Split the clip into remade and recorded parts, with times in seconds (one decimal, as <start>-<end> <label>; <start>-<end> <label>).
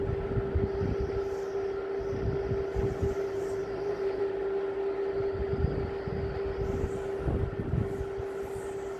0.0-3.6 recorded; 3.6-4.2 remade; 4.2-9.0 recorded